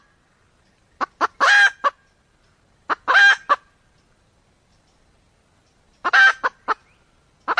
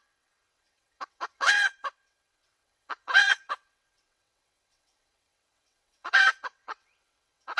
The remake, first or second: second